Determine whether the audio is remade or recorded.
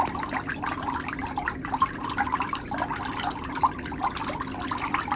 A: recorded